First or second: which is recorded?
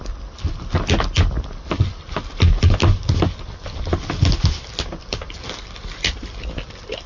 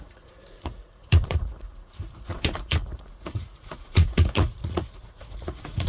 first